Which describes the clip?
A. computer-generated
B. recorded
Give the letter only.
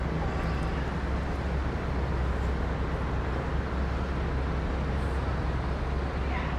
B